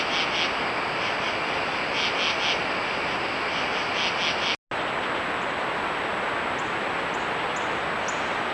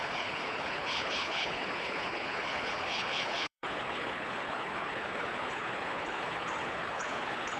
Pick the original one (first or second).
first